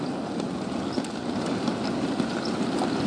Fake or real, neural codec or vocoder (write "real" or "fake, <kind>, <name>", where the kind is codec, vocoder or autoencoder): real